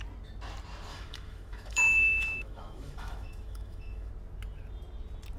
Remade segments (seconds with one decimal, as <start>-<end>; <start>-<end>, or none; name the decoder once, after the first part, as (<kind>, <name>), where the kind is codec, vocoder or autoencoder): 0.9-4.1 (autoencoder, DAC-VAE)